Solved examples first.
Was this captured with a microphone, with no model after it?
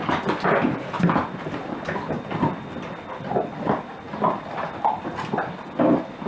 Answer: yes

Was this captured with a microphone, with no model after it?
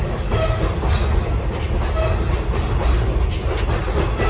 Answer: yes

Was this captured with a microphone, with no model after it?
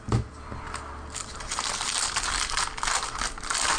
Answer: yes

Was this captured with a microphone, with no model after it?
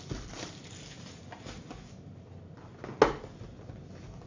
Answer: yes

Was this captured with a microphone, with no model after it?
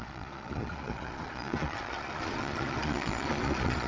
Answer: no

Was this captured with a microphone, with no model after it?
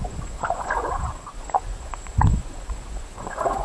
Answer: no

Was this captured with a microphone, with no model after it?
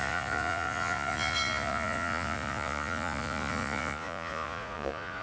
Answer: no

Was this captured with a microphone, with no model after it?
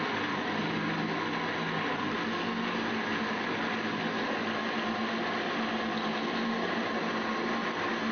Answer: yes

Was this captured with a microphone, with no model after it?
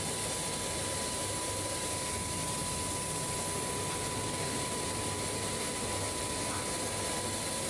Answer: yes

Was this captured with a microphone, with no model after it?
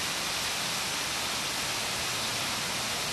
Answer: yes